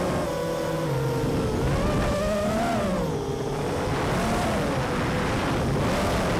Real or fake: real